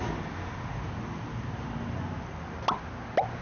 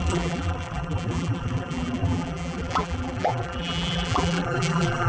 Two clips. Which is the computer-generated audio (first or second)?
second